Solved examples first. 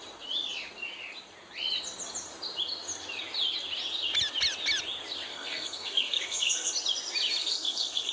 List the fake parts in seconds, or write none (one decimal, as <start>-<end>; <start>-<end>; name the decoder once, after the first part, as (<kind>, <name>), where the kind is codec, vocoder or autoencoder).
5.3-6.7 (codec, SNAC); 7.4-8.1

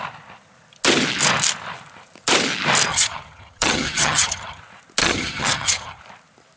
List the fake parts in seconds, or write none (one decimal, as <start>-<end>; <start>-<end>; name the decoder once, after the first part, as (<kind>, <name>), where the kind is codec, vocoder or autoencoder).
2.9-4.6 (vocoder, HiFi-GAN); 5.0-6.0

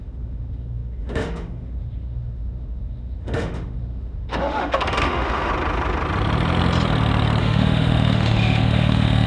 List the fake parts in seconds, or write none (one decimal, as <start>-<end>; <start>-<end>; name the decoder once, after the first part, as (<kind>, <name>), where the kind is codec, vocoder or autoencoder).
0.0-5.5 (autoencoder, DAC-VAE); 7.4-9.3

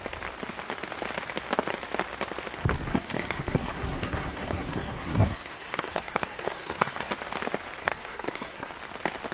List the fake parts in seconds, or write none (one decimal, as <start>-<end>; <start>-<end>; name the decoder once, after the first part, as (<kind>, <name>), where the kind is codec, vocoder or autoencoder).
2.9-7.1 (codec, SNAC); 7.8-8.7

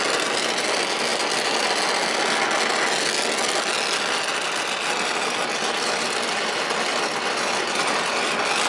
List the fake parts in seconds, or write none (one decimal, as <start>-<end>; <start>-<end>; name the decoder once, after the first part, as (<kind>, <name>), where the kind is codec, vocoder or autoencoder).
none

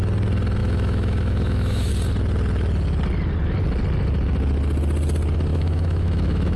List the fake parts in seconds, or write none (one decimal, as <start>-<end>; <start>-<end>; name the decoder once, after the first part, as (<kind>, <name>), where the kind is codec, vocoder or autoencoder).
0.6-1.9 (autoencoder, DAC-VAE); 5.5-6.6